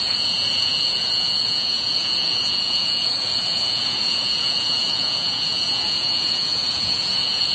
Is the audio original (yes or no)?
no